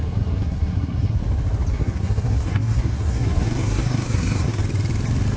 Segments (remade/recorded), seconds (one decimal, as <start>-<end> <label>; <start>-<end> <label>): 0.0-1.2 remade; 1.2-1.7 recorded; 1.7-4.6 remade; 4.6-5.4 recorded